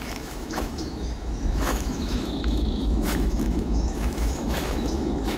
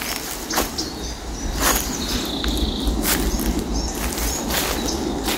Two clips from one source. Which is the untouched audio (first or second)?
second